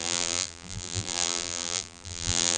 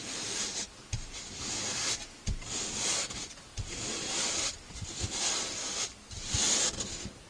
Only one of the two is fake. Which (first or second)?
first